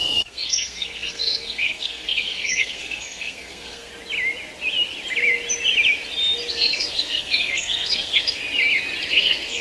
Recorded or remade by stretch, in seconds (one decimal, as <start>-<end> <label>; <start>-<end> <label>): 0.0-3.9 remade; 3.9-6.5 recorded; 6.5-8.4 remade; 8.4-9.1 recorded; 9.1-9.6 remade

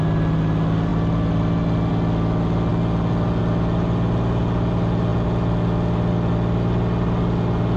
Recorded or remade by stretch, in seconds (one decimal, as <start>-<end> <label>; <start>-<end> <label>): 0.0-7.8 recorded

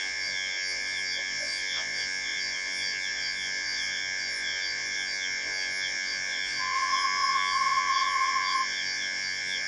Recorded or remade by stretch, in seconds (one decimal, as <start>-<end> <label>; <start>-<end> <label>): 0.0-9.7 remade

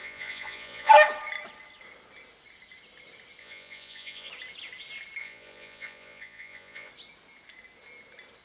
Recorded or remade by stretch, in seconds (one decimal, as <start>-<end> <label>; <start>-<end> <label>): 0.0-0.9 remade; 0.9-3.4 recorded; 3.4-4.3 remade; 4.3-5.2 recorded; 5.2-6.9 remade; 6.9-8.4 recorded

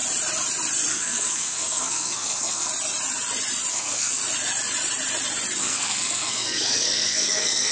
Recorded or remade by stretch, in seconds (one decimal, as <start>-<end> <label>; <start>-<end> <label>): 0.0-0.9 recorded; 0.9-2.7 remade; 2.7-3.7 recorded; 3.7-4.2 remade; 4.2-5.6 recorded; 5.6-7.7 remade

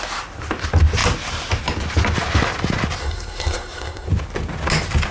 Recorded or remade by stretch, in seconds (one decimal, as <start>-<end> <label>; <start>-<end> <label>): 0.0-3.0 recorded; 3.0-4.1 remade; 4.1-5.1 recorded